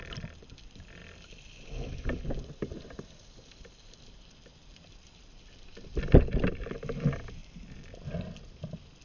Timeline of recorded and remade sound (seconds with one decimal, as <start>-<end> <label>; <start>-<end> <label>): 0.0-7.4 recorded; 7.4-8.5 remade; 8.5-9.0 recorded